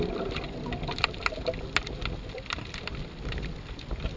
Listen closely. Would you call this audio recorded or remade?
recorded